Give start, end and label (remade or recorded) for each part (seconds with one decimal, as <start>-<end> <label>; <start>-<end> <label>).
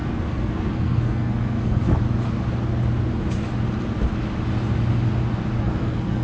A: 0.0-1.9 remade; 1.9-5.6 recorded; 5.6-6.2 remade